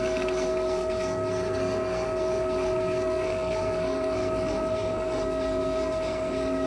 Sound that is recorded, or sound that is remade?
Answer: remade